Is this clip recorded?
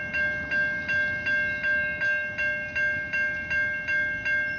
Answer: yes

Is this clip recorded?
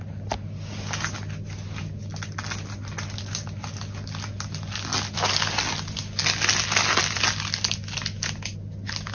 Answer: yes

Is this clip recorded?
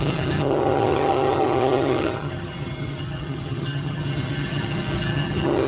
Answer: no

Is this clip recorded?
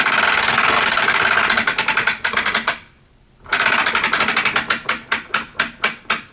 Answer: yes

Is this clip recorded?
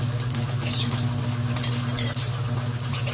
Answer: yes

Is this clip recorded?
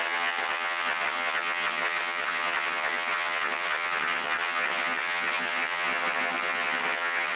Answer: no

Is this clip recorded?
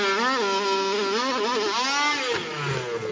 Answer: yes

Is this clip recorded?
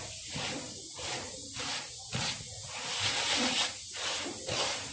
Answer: yes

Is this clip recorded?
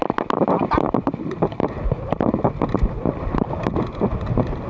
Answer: yes